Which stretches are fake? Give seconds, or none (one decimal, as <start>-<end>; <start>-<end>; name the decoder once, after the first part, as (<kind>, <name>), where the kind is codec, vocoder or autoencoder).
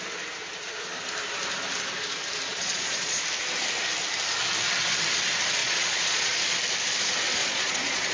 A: 2.5-3.2 (vocoder, Vocos); 5.6-6.4; 7.4-8.1